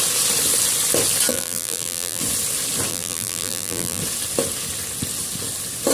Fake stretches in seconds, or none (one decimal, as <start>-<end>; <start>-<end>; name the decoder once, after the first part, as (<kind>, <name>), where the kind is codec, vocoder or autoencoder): 1.3-2.2 (vocoder, BigVGAN v2); 2.9-4.0